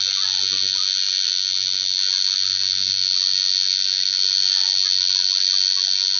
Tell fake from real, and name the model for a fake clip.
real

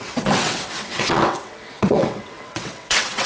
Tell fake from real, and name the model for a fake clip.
fake, vocoder, WaveNeXt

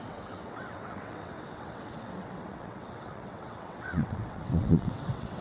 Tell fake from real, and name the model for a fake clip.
fake, vocoder, WaveNeXt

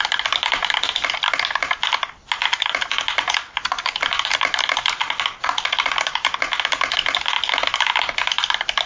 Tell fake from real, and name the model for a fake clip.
real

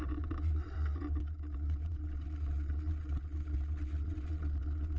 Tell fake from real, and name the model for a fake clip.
fake, vocoder, WaveNeXt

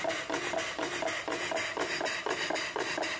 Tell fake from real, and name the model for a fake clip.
real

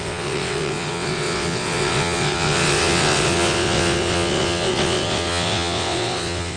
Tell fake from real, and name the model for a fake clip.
fake, vocoder, WaveNeXt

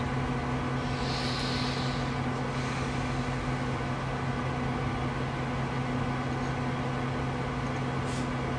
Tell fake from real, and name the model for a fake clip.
real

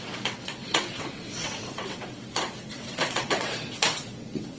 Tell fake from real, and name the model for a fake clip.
fake, vocoder, WaveNeXt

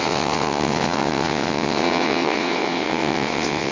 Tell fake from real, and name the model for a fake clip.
fake, vocoder, WaveNeXt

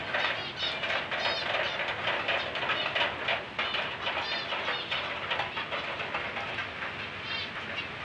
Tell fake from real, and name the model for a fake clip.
real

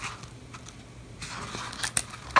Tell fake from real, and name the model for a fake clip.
real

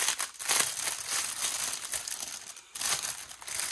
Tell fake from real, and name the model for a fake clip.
real